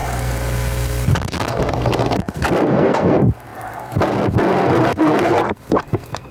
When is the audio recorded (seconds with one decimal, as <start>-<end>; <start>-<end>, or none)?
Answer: none